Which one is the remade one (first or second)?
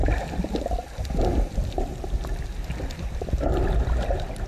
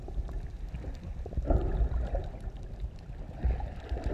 second